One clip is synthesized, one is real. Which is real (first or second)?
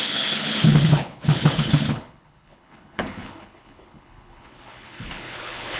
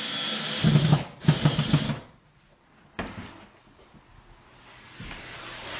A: second